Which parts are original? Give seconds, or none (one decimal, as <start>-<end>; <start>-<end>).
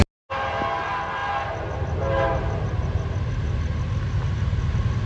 0.0-5.1